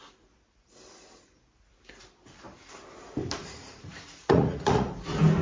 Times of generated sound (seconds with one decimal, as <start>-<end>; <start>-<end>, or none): 3.4-4.9